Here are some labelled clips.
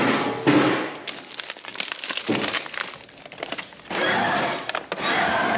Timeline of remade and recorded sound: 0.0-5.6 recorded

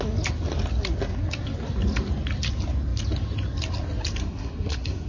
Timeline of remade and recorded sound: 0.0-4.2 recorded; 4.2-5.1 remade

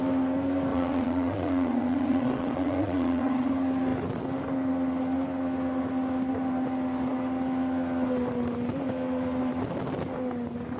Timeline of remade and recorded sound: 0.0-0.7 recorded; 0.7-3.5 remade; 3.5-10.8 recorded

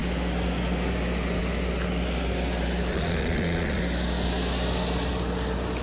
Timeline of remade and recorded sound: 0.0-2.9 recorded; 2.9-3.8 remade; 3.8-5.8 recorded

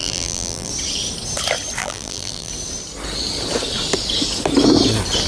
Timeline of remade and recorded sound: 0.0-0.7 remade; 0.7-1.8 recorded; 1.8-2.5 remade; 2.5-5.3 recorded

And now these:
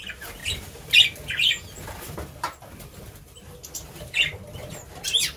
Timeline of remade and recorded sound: 0.0-5.4 recorded

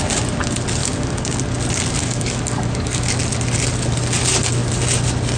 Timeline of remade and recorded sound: 0.0-0.8 recorded; 0.8-1.4 remade; 1.4-2.0 recorded; 2.0-3.2 remade; 3.2-5.4 recorded